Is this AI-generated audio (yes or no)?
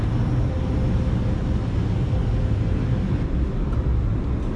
no